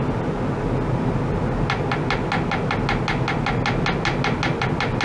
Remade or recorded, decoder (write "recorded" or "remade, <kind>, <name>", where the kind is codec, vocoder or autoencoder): recorded